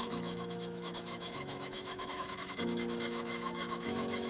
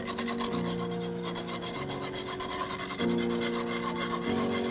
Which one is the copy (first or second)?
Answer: first